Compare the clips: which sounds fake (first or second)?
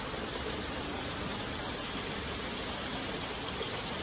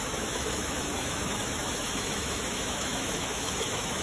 second